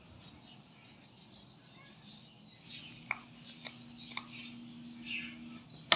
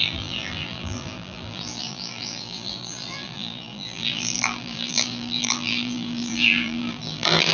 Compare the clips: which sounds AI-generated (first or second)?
second